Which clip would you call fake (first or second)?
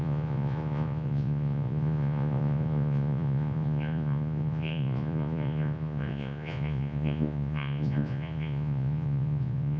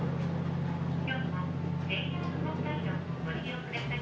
first